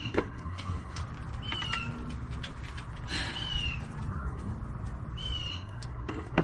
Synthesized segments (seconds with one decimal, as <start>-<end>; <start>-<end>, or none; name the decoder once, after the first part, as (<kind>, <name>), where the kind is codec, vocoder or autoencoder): 0.0-1.0 (codec, SNAC); 4.1-4.5; 5.5-6.4